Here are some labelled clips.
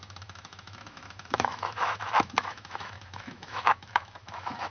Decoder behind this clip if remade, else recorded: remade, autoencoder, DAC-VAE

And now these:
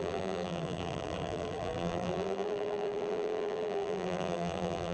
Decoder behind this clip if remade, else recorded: remade, vocoder, BigVGAN v2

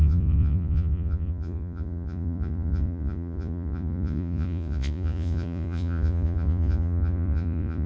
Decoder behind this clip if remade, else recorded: remade, vocoder, Vocos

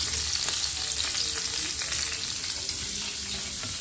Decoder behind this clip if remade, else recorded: recorded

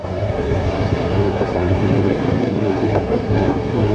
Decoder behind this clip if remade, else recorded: remade, codec, SNAC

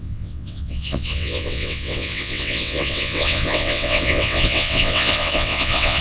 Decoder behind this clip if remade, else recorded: remade, vocoder, WaveNeXt